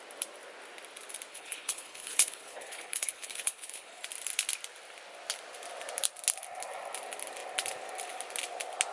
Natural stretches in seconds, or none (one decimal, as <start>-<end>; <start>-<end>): 0.0-1.3; 4.0-8.9